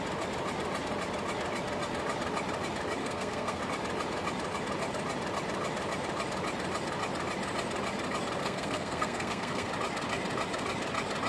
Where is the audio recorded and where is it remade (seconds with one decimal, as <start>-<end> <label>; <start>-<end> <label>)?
0.0-3.0 recorded; 3.0-3.6 remade; 3.6-8.4 recorded; 8.4-9.7 remade; 9.7-11.3 recorded